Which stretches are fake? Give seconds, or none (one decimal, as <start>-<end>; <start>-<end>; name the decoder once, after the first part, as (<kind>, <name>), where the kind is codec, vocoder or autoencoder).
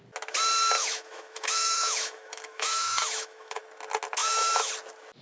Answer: 0.8-3.6 (autoencoder, DAC-VAE); 4.2-4.7